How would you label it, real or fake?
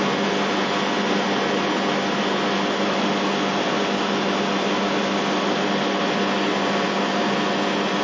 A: real